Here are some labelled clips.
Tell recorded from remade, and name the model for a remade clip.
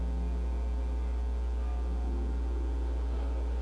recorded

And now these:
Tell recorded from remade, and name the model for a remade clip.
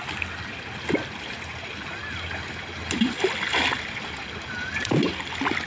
recorded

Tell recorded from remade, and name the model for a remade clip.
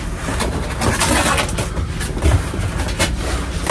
recorded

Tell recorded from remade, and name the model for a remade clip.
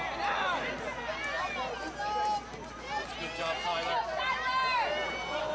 recorded